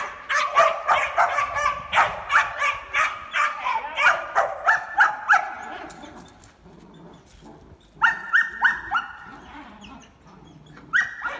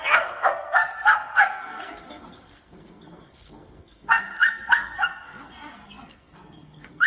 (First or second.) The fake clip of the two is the second